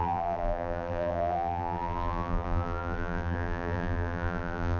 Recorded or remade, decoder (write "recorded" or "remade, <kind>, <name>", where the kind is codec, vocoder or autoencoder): remade, vocoder, BigVGAN v2